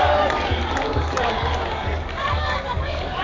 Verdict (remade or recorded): remade